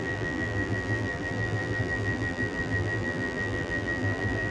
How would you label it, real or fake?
fake